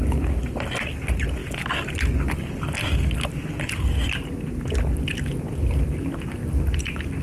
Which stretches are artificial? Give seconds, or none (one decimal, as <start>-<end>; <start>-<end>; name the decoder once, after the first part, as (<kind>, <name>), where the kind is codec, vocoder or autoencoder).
none